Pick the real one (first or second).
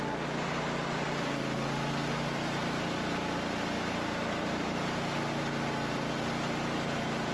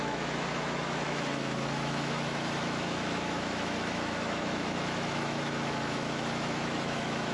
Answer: first